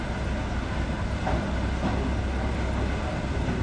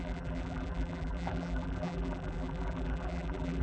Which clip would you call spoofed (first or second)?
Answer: second